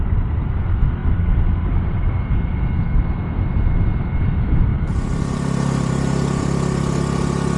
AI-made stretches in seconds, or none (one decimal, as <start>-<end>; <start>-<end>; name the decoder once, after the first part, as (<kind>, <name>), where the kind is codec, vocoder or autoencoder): 4.7-5.9 (vocoder, BigVGAN v2)